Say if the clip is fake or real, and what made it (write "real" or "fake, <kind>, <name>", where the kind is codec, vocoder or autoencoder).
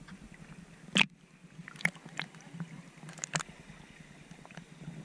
real